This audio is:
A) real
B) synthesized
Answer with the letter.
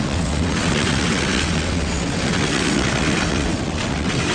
B